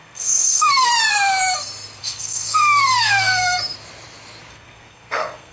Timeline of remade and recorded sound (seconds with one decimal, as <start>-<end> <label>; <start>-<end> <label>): 0.0-0.9 remade; 0.9-2.0 recorded; 2.0-3.6 remade; 3.6-4.5 recorded; 4.5-5.5 remade

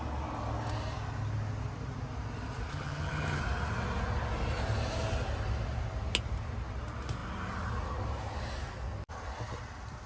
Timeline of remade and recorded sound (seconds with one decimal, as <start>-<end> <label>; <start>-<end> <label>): 0.0-2.7 recorded; 2.7-3.4 remade; 3.4-10.1 recorded

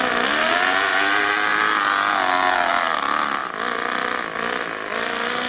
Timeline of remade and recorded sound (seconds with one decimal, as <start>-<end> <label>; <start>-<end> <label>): 0.0-5.5 recorded

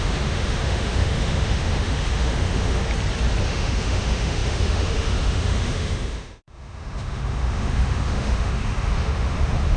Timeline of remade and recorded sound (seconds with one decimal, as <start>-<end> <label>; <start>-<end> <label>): 0.0-2.8 remade; 2.8-3.4 recorded; 3.4-9.8 remade

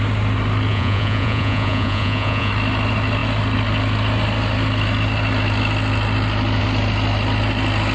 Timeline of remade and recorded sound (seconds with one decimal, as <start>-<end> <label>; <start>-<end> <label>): 0.0-0.7 recorded; 0.7-2.5 remade; 2.5-7.9 recorded

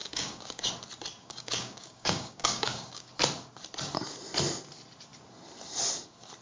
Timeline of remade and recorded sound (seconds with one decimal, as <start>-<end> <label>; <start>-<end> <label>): 0.0-0.7 remade; 0.7-1.2 recorded; 1.2-3.1 remade; 3.1-6.4 recorded

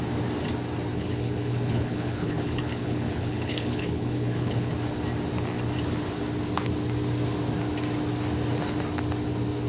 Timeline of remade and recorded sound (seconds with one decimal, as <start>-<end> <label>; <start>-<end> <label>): 0.0-0.9 recorded; 0.9-4.7 remade; 4.7-9.7 recorded